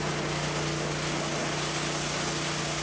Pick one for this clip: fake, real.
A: real